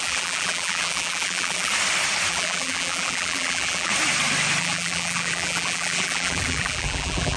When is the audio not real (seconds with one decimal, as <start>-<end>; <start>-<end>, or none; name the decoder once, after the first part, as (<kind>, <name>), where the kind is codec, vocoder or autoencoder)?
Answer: 0.0-1.7 (vocoder, BigVGAN v2); 2.3-3.9; 4.6-7.4